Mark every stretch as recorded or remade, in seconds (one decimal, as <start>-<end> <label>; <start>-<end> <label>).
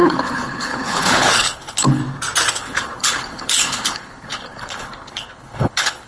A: 0.0-2.0 remade; 2.0-2.5 recorded; 2.5-6.1 remade